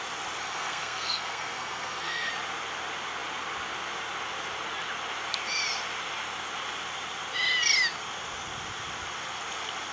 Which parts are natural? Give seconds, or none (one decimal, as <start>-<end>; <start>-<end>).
0.0-0.4; 2.3-9.9